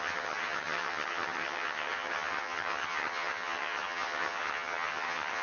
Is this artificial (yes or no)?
yes